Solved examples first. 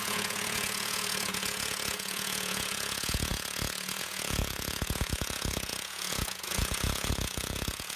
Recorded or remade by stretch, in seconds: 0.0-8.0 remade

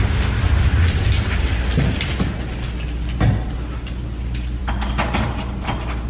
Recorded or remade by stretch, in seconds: 0.0-6.1 recorded